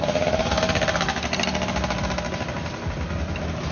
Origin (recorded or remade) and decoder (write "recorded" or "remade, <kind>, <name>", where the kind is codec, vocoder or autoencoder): recorded